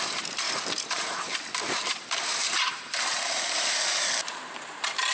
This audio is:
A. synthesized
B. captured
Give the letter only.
A